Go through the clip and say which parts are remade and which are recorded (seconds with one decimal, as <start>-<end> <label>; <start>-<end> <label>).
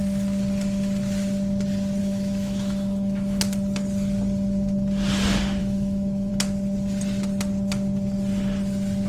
0.0-2.0 recorded; 2.0-3.4 remade; 3.4-5.6 recorded; 5.6-6.3 remade; 6.3-9.1 recorded